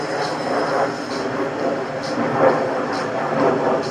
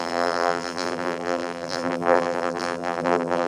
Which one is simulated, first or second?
second